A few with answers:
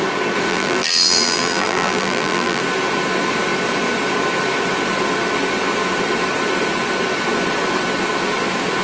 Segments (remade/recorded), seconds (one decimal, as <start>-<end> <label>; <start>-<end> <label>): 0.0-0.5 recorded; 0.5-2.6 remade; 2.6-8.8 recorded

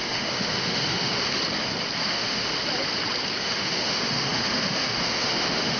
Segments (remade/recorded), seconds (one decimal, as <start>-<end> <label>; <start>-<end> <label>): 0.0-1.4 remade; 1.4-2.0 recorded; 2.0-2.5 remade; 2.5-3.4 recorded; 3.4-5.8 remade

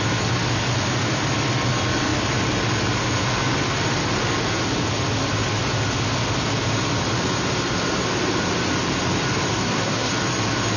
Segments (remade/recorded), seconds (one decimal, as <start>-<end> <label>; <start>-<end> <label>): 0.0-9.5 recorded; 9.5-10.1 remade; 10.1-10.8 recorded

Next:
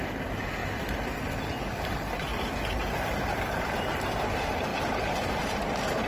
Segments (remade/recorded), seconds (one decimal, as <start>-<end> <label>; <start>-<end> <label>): 0.0-0.6 remade; 0.6-1.6 recorded; 1.6-2.3 remade; 2.3-2.9 recorded; 2.9-6.1 remade